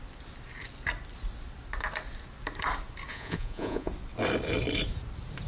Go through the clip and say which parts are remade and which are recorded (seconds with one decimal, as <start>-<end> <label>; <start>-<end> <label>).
0.0-3.1 recorded; 3.1-3.9 remade; 3.9-5.5 recorded